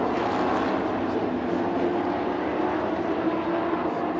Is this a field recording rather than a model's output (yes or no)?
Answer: yes